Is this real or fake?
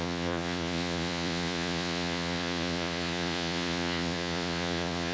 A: fake